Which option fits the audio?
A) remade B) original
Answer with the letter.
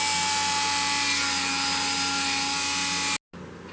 B